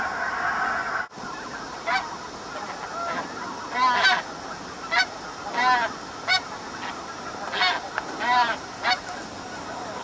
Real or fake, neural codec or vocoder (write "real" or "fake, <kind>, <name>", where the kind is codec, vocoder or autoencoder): real